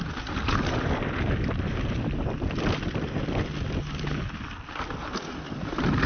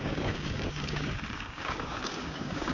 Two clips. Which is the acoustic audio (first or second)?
first